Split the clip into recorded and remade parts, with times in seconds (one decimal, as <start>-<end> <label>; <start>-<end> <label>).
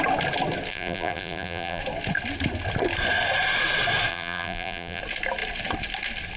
0.0-0.7 recorded; 0.7-1.8 remade; 1.8-4.1 recorded; 4.1-5.0 remade; 5.0-6.4 recorded